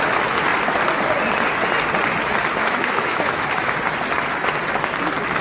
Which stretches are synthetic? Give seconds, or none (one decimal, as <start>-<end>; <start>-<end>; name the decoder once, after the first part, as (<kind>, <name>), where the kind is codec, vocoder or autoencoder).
2.6-3.7 (autoencoder, DAC-VAE)